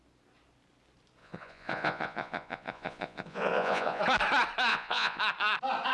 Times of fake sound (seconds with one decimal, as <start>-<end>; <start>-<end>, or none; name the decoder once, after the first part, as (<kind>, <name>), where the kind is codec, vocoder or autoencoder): 1.2-4.0 (vocoder, Vocos); 4.7-5.2